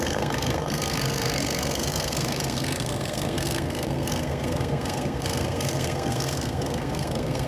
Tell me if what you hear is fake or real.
fake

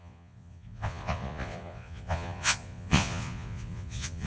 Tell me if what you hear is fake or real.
fake